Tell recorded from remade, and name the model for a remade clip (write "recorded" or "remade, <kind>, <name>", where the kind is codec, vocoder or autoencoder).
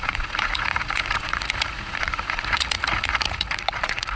remade, vocoder, Vocos